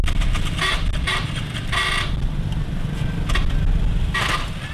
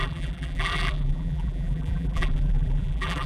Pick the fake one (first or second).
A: second